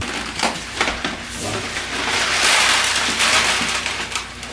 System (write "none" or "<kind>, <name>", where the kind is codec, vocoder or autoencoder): none